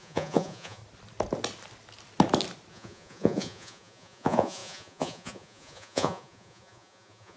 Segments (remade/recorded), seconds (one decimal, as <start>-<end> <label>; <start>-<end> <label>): 0.0-0.8 remade; 0.8-2.7 recorded; 2.7-7.4 remade